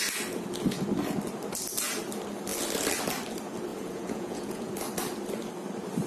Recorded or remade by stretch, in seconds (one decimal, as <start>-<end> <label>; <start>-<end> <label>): 0.0-3.7 recorded; 3.7-4.7 remade; 4.7-6.1 recorded